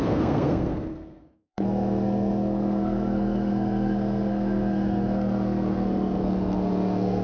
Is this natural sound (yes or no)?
no